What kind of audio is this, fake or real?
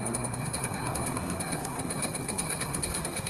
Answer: fake